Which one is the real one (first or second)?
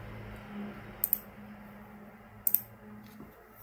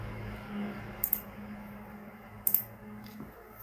first